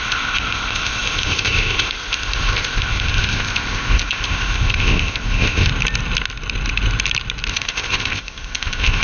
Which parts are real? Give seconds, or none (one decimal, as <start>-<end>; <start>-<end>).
5.7-7.5